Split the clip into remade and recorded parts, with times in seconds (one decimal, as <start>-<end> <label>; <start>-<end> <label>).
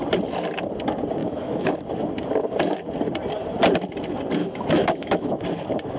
0.0-1.2 recorded; 1.2-1.7 remade; 1.7-4.4 recorded; 4.4-5.4 remade; 5.4-6.0 recorded